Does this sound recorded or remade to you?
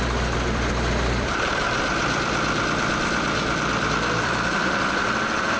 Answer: remade